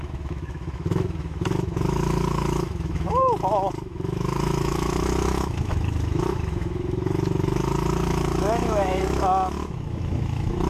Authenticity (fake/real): fake